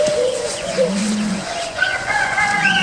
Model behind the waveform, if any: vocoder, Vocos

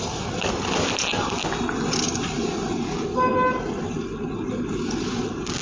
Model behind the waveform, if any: none